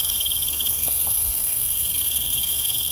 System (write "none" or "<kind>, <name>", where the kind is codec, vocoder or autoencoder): codec, SNAC